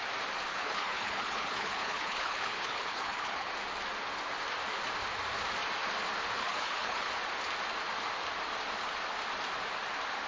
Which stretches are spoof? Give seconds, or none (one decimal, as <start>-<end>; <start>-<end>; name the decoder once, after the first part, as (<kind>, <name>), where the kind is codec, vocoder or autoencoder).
0.5-3.5 (codec, HILCodec); 6.4-7.1